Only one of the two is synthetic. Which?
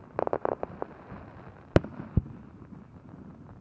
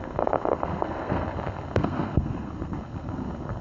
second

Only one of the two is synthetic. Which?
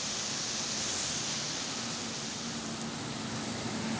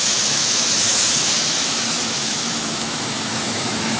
second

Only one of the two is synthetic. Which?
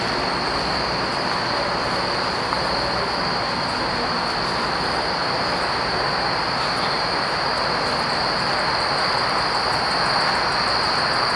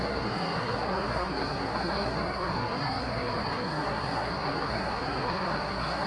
second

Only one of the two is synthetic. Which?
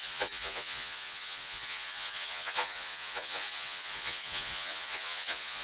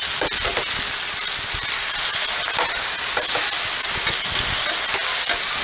first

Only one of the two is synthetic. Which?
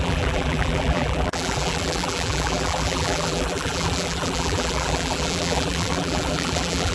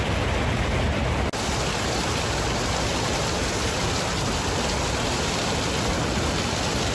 first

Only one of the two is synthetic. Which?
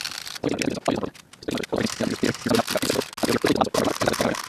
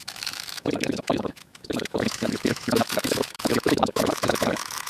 second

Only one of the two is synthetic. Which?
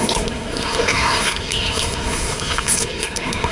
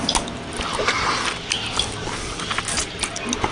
first